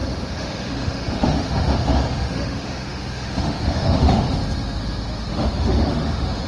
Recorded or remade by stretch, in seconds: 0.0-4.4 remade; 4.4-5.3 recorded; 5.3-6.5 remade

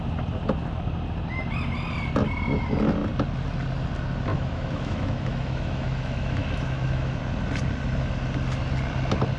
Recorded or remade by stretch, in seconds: 0.0-4.3 recorded; 4.3-7.2 remade; 7.2-9.4 recorded

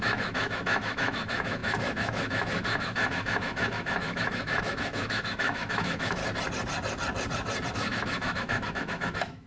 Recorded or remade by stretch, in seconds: 0.0-6.2 remade; 6.2-7.7 recorded; 7.7-9.5 remade

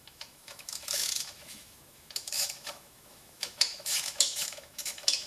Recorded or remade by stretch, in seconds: 0.0-5.3 remade

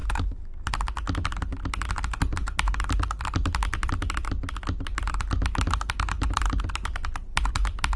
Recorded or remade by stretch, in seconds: 0.0-0.7 remade; 0.7-8.0 recorded

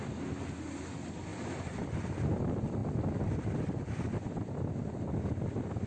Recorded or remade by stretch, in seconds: 0.0-5.9 recorded

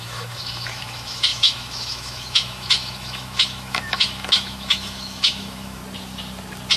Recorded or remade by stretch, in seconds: 0.0-5.8 remade; 5.8-6.8 recorded